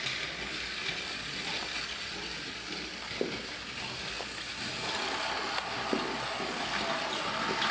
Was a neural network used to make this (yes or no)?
no